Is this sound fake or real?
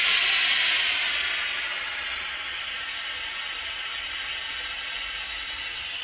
real